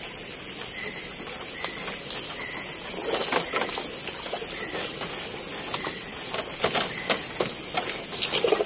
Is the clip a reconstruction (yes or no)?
no